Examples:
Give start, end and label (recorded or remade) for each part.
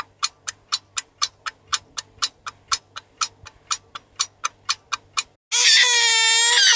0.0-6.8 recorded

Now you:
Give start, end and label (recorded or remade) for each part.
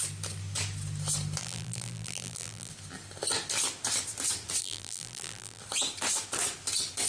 0.0-1.4 recorded; 1.4-2.7 remade; 2.7-4.6 recorded; 4.6-5.6 remade; 5.6-7.1 recorded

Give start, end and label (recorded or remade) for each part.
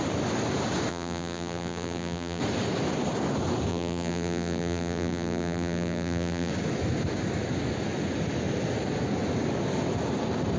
0.0-0.9 recorded; 0.9-2.4 remade; 2.4-3.7 recorded; 3.7-6.5 remade; 6.5-10.6 recorded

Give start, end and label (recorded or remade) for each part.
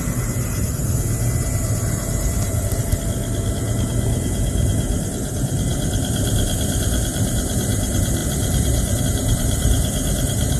0.0-2.9 remade; 2.9-3.5 recorded; 3.5-10.6 remade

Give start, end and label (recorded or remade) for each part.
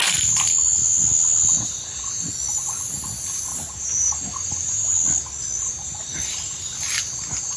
0.0-3.5 recorded; 3.5-4.9 remade; 4.9-7.6 recorded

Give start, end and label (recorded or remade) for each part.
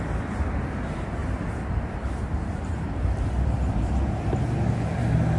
0.0-1.2 recorded; 1.2-4.4 remade; 4.4-5.4 recorded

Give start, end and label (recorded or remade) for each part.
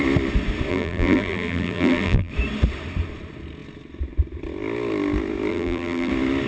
0.0-0.7 recorded; 0.7-2.3 remade; 2.3-5.5 recorded; 5.5-6.1 remade; 6.1-6.5 recorded